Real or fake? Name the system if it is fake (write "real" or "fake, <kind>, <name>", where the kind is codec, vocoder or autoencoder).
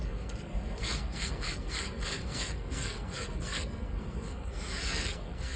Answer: fake, codec, SNAC